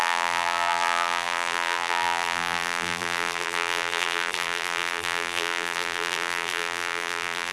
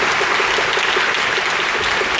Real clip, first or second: second